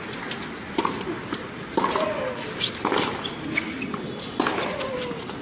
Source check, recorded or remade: recorded